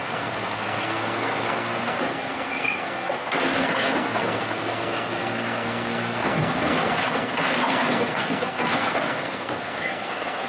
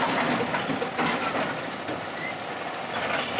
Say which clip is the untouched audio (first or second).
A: second